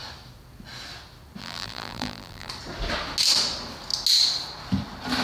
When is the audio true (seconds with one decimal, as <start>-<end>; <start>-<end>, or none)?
0.0-1.4; 2.5-5.2